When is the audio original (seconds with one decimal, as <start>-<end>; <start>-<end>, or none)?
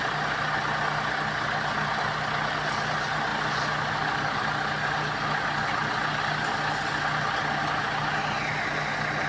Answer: 0.0-9.3